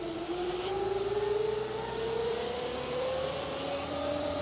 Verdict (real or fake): fake